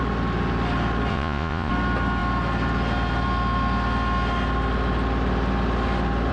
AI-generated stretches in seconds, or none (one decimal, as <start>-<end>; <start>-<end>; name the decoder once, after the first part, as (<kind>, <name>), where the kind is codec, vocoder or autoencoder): 1.1-1.7 (vocoder, Vocos)